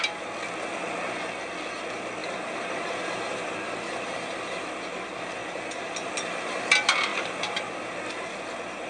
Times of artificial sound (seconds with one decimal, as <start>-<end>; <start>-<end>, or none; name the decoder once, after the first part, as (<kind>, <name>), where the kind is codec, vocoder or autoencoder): 2.2-4.7 (vocoder, BigVGAN v2); 5.4-6.1; 7.1-7.8